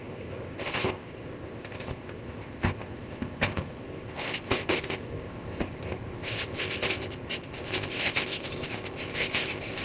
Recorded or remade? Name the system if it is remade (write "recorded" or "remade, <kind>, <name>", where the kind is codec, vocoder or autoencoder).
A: remade, codec, ZipCodec